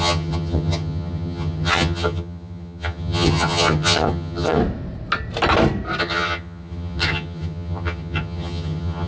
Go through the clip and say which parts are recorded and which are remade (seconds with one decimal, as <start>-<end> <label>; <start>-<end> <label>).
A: 0.0-4.6 remade; 4.6-6.0 recorded; 6.0-9.1 remade